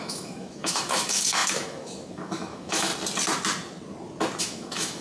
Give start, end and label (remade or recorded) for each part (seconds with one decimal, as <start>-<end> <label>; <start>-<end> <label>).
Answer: 0.0-2.9 remade; 2.9-4.4 recorded; 4.4-5.0 remade